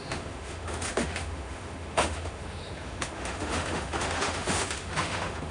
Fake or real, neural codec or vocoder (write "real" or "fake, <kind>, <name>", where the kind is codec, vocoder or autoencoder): fake, autoencoder, DAC-VAE